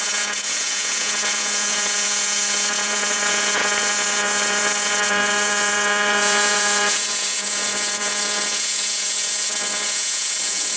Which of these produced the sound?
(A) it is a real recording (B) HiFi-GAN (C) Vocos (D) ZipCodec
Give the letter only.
C